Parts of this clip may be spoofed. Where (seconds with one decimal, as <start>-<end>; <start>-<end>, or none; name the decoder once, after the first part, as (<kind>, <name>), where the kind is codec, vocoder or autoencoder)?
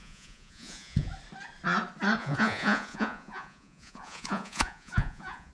0.0-1.1 (vocoder, Vocos); 2.2-5.5